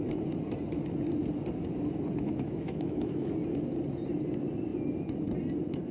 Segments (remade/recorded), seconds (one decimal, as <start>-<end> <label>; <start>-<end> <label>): 0.0-2.2 recorded; 2.2-3.3 remade; 3.3-5.9 recorded

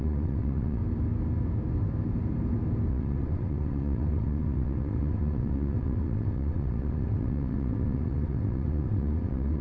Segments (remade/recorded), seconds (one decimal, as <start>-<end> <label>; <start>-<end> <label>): 0.0-0.8 remade; 0.8-2.9 recorded; 2.9-9.6 remade

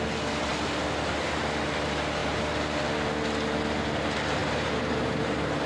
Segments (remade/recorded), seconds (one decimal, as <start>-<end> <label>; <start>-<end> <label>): 0.0-2.2 recorded; 2.2-2.9 remade; 2.9-4.4 recorded; 4.4-5.7 remade

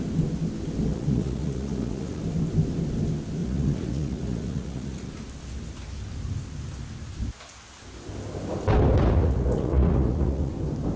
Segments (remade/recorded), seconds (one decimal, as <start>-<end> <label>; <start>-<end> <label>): 0.0-0.9 recorded; 0.9-2.2 remade; 2.2-3.4 recorded; 3.4-5.1 remade; 5.1-9.0 recorded; 9.0-10.5 remade; 10.5-11.0 recorded

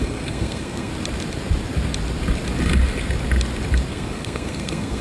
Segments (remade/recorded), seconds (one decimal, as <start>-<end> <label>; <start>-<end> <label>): 0.0-0.9 remade; 0.9-3.9 recorded; 3.9-5.0 remade